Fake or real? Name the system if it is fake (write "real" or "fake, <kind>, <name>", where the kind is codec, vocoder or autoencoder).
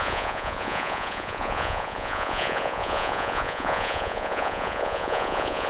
fake, vocoder, Vocos